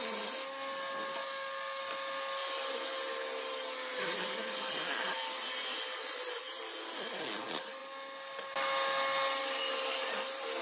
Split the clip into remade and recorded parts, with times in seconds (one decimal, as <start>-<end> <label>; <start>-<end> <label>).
0.0-1.2 recorded; 1.2-1.8 remade; 1.8-10.6 recorded